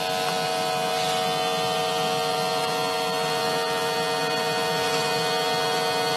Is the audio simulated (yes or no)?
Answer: no